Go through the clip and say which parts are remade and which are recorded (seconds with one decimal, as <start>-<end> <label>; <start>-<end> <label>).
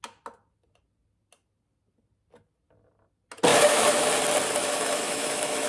0.0-3.5 recorded; 3.5-4.1 remade; 4.1-4.6 recorded; 4.6-5.7 remade